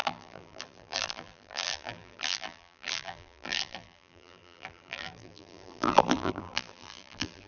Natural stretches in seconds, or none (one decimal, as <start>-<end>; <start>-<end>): none